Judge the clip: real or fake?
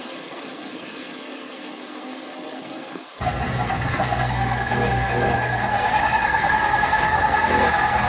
fake